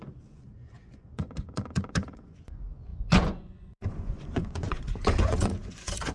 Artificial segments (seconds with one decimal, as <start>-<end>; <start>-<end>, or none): 0.0-6.1